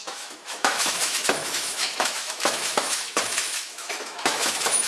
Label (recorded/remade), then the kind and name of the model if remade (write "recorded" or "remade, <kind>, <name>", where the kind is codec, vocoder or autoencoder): remade, autoencoder, DAC-VAE